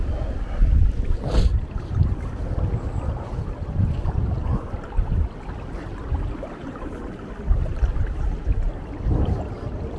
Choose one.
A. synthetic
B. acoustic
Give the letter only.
B